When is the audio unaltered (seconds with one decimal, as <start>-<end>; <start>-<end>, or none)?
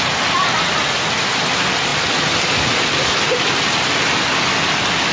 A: 0.0-5.1